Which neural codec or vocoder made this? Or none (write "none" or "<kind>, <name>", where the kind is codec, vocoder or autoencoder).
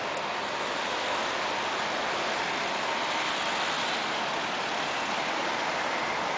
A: none